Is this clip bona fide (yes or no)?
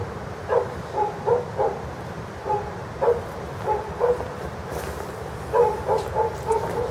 yes